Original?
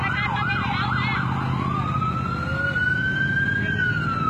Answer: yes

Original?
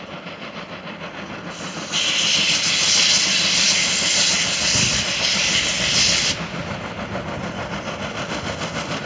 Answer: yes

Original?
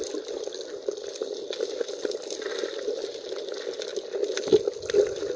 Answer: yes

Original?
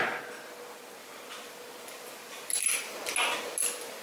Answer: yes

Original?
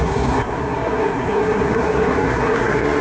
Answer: no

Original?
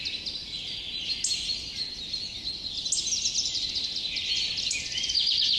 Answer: yes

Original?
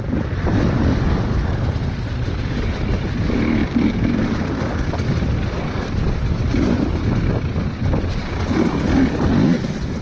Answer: yes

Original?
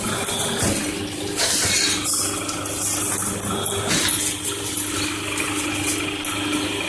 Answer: yes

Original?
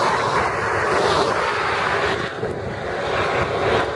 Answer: yes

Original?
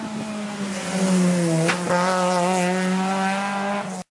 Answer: yes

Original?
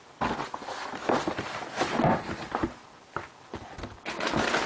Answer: yes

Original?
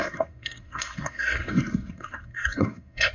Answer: no